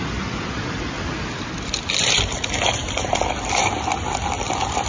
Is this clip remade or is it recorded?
recorded